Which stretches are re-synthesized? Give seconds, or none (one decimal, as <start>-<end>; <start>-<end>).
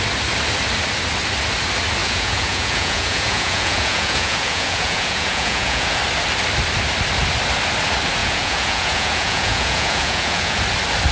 2.0-6.0; 8.2-10.6